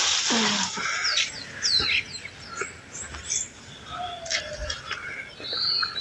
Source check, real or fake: real